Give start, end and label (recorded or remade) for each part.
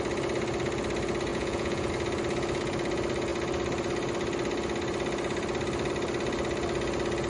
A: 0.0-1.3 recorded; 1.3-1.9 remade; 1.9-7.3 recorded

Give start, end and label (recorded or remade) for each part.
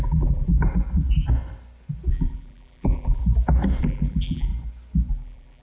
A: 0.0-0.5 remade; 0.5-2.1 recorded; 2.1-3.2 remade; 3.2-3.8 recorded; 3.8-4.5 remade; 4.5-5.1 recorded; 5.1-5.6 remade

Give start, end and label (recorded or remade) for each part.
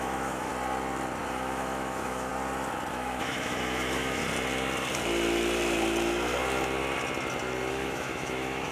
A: 0.0-0.5 remade; 0.5-1.2 recorded; 1.2-2.3 remade; 2.3-2.9 recorded; 2.9-4.2 remade; 4.2-7.7 recorded; 7.7-8.7 remade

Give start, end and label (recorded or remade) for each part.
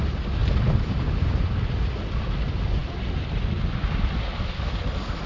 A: 0.0-0.4 recorded; 0.4-1.6 remade; 1.6-5.3 recorded